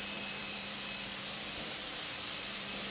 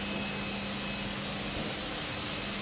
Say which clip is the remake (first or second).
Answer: first